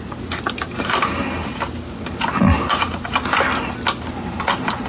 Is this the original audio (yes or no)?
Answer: yes